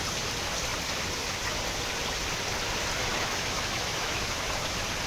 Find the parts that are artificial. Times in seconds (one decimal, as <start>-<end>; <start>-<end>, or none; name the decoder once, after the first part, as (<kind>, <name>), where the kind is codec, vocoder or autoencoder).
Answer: 3.1-4.5 (autoencoder, DAC-VAE)